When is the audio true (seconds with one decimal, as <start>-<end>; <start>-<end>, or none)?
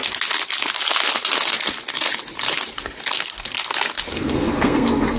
0.0-4.1